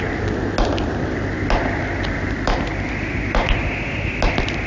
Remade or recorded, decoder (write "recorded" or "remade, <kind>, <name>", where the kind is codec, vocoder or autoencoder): recorded